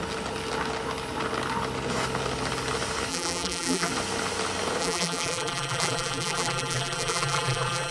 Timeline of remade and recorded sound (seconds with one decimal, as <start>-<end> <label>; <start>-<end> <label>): 0.0-3.1 recorded; 3.1-3.9 remade; 3.9-4.8 recorded; 4.8-7.9 remade

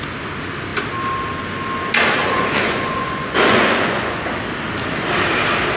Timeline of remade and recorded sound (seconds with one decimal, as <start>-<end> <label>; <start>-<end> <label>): 0.0-2.2 recorded; 2.2-4.3 remade; 4.3-5.8 recorded

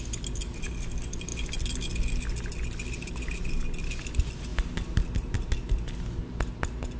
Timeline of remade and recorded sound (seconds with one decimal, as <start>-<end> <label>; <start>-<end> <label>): 0.0-7.0 recorded

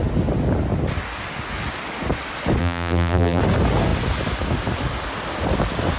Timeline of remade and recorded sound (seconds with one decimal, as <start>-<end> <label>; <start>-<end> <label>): 0.0-2.6 recorded; 2.6-3.4 remade; 3.4-6.0 recorded

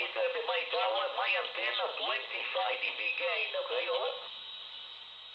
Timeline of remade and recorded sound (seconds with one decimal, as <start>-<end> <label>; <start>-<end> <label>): 0.0-5.3 recorded

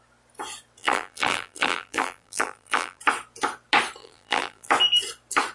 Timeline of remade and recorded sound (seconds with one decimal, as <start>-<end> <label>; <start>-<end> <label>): 0.0-0.8 recorded; 0.8-3.0 remade; 3.0-4.0 recorded; 4.0-4.7 remade; 4.7-5.5 recorded